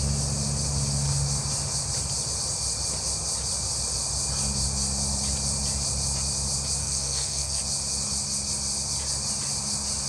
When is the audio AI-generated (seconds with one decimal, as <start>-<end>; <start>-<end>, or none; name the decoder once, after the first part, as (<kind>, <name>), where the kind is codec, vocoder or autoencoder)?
6.8-7.6 (codec, SNAC)